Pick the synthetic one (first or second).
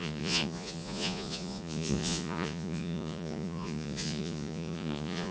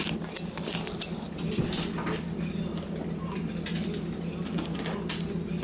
first